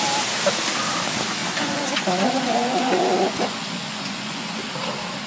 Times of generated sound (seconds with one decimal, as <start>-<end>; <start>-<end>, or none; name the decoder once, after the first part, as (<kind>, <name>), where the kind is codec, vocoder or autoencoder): 1.4-4.6 (vocoder, Vocos)